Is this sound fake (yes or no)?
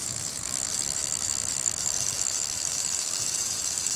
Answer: yes